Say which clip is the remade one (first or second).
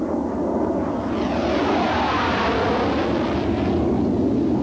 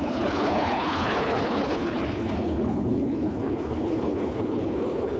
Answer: second